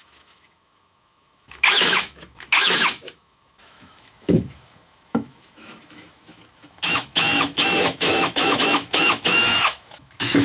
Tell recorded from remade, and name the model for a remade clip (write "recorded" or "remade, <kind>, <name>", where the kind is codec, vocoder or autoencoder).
remade, autoencoder, DAC-VAE